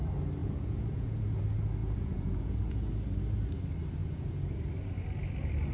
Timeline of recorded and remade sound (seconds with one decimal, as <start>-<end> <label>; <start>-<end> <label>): 0.0-0.4 recorded; 0.4-1.4 remade; 1.4-1.8 recorded; 1.8-2.9 remade; 2.9-4.0 recorded; 4.0-4.6 remade; 4.6-5.7 recorded